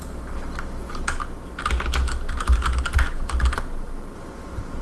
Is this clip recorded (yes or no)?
yes